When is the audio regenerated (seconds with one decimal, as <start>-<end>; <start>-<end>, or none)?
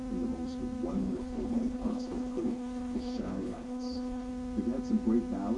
0.9-4.3